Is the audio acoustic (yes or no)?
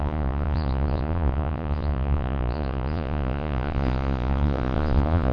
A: no